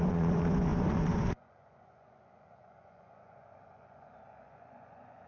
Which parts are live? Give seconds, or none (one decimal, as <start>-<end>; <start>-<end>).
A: none